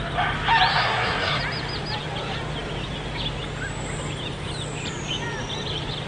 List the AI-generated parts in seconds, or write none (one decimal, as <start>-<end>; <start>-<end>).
0.7-1.4